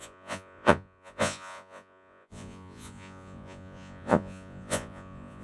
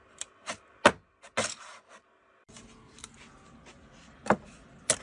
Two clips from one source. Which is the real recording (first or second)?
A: second